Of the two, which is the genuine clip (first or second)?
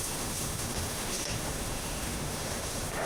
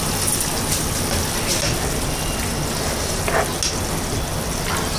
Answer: second